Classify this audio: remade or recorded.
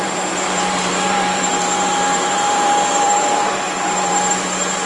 remade